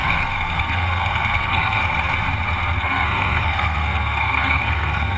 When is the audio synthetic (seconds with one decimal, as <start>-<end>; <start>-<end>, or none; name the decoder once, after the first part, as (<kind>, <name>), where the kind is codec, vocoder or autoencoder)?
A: 0.0-1.8 (codec, SNAC); 2.8-5.2